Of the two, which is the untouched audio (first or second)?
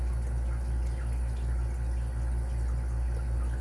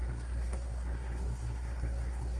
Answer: first